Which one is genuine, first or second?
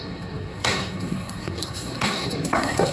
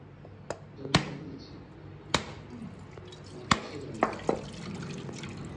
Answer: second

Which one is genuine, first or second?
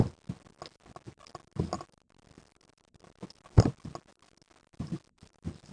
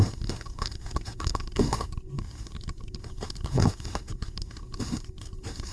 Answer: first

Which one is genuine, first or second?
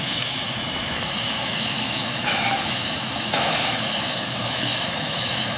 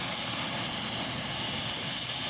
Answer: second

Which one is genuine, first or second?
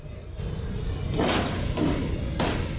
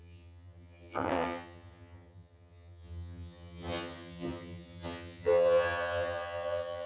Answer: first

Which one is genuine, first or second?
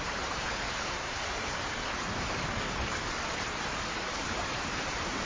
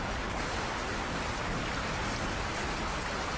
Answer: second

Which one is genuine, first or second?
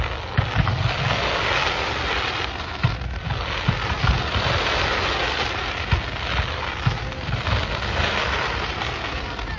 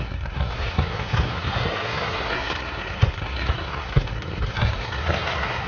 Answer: first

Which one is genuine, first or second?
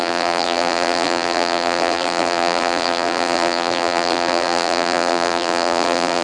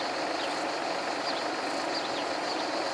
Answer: second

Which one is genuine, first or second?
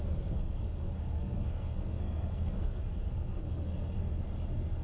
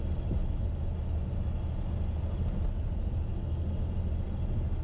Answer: second